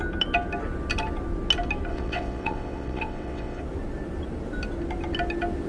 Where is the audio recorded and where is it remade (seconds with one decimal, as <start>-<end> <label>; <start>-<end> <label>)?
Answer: 0.0-1.9 recorded; 1.9-3.6 remade; 3.6-5.7 recorded